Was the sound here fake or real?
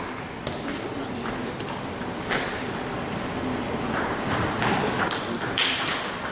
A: real